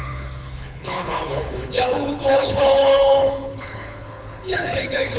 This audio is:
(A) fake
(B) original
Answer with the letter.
A